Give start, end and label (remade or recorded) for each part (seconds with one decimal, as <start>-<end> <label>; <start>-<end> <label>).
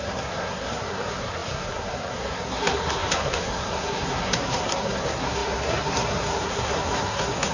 0.0-7.5 remade